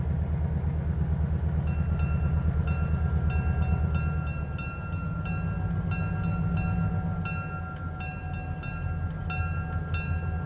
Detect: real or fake real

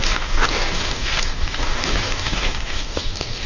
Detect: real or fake fake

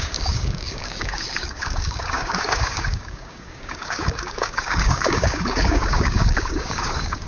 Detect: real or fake fake